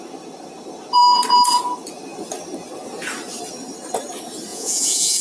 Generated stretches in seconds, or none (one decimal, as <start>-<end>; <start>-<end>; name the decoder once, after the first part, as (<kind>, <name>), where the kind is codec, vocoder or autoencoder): 4.5-5.2 (vocoder, Vocos)